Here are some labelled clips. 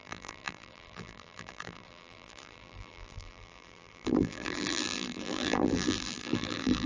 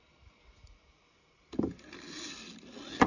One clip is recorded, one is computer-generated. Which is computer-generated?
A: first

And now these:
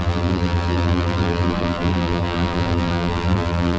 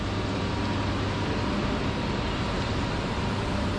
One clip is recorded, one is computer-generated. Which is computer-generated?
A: first